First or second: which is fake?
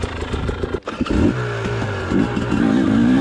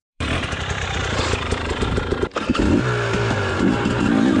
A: second